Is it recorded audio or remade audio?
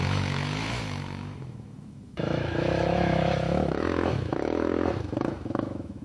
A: remade